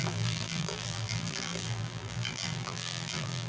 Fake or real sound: fake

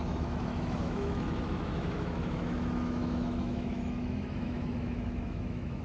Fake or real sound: fake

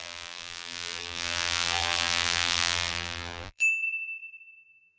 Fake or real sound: fake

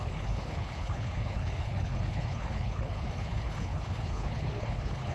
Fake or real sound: fake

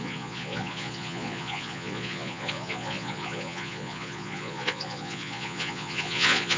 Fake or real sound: fake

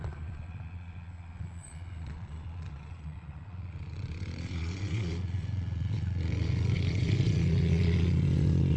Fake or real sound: fake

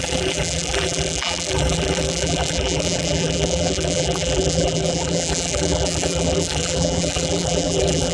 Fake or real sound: fake